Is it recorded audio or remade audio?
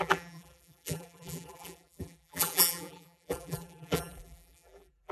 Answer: remade